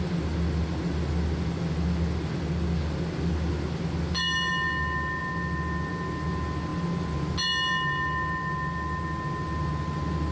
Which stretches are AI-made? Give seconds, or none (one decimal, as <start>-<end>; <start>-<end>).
none